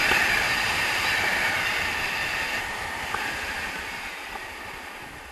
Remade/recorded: recorded